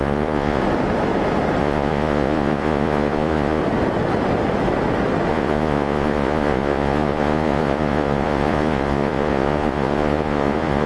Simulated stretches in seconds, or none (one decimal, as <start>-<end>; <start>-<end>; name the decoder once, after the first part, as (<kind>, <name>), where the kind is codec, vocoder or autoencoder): 0.0-0.6 (vocoder, Vocos); 1.6-3.6; 5.3-10.9